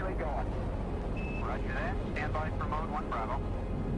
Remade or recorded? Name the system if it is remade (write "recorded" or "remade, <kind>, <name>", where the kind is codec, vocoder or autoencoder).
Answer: recorded